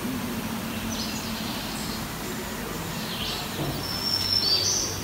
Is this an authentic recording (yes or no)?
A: yes